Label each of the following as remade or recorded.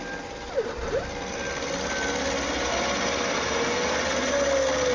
recorded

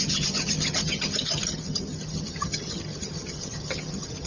remade